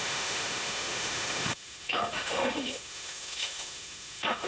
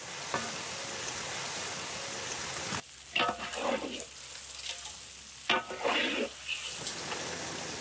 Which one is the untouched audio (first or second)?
second